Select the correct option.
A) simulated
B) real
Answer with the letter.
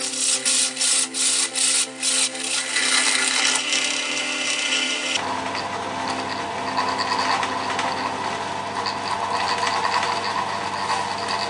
B